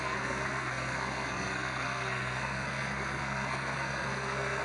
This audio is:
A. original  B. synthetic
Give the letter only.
B